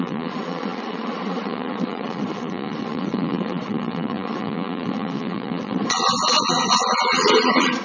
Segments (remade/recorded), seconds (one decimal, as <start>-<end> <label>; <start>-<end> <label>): 0.0-7.8 remade